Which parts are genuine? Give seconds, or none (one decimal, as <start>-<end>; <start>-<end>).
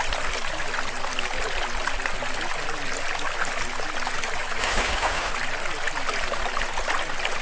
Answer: 0.0-4.6; 5.3-7.4